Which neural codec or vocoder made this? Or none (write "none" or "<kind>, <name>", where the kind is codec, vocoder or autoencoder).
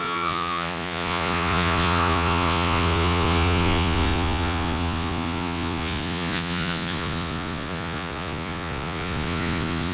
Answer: vocoder, Vocos